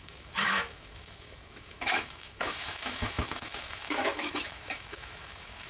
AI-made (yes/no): yes